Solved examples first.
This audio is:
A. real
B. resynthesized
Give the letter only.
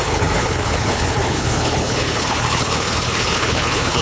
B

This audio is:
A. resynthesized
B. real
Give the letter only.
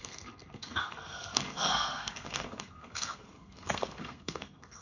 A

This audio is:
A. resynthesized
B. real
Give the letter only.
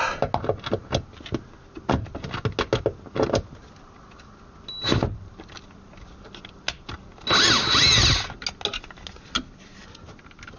B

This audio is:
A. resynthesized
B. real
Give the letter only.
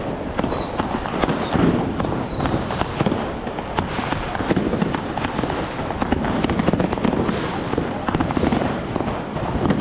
A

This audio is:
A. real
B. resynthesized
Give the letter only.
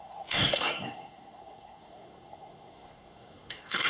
B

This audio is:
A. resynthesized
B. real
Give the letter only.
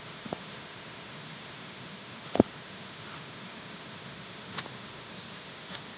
A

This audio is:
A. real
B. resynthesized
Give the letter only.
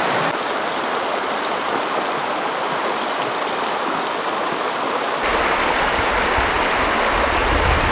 A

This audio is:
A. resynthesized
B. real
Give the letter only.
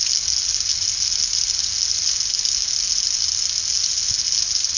B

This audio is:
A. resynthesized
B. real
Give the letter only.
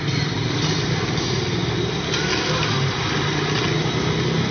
B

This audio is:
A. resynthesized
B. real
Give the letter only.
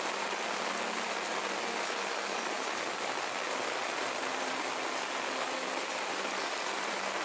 B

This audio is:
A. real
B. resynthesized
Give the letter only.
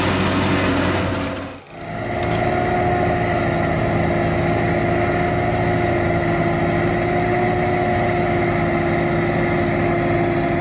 A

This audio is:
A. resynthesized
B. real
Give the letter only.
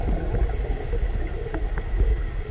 B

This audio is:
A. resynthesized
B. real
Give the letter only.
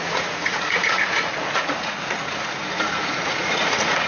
A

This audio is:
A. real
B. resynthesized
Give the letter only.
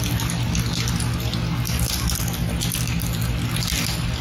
A